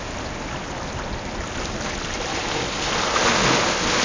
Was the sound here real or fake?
real